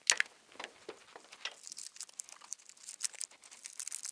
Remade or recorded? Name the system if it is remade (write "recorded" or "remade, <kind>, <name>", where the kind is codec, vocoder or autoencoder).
recorded